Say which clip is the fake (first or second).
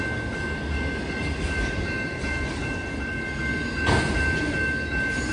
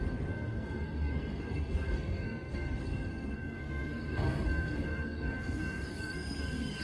second